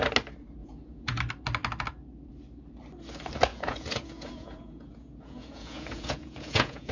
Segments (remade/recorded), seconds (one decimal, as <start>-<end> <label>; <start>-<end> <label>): 0.0-0.6 recorded; 0.6-1.2 remade; 1.2-3.5 recorded; 3.5-6.9 remade